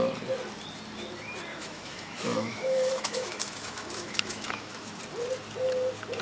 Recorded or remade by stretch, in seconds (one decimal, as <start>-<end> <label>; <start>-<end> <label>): 0.0-1.5 recorded; 1.5-5.0 remade; 5.0-6.2 recorded